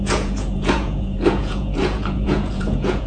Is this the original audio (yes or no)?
no